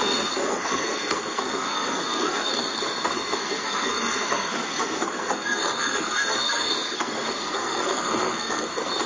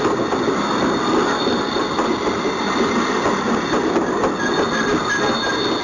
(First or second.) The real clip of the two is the second